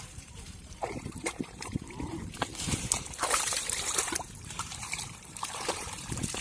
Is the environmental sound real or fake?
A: fake